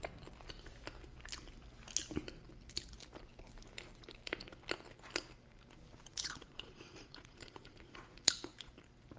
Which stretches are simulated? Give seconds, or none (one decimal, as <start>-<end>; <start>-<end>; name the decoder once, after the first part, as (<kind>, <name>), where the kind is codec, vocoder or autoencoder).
6.1-8.7 (vocoder, Vocos)